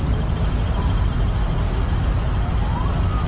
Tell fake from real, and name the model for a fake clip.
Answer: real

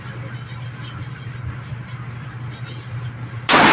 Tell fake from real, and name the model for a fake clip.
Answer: real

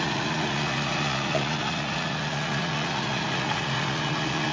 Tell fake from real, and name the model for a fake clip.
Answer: fake, vocoder, Vocos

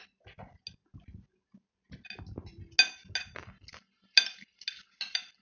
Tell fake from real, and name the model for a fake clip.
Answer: real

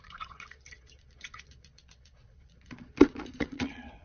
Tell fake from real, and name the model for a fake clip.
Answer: fake, vocoder, Vocos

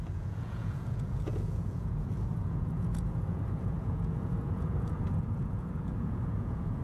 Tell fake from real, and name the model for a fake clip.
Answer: fake, vocoder, Vocos